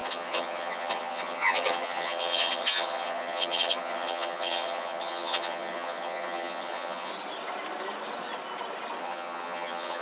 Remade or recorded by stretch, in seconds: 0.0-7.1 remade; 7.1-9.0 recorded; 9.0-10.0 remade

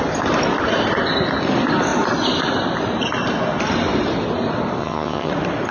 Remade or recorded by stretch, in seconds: 0.0-4.8 recorded; 4.8-5.3 remade; 5.3-5.7 recorded

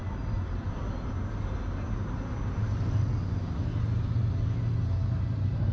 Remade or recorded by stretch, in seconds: 0.0-5.7 recorded

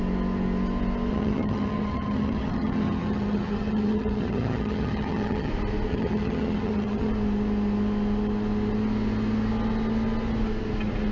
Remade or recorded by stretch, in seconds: 0.0-1.1 recorded; 1.1-5.5 remade; 5.5-5.9 recorded; 5.9-7.1 remade; 7.1-11.1 recorded